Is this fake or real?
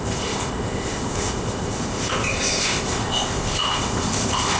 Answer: fake